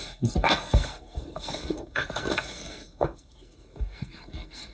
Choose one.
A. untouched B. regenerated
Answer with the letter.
B